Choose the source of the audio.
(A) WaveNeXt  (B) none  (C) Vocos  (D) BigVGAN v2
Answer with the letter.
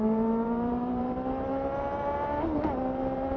D